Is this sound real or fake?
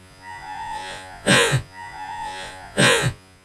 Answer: fake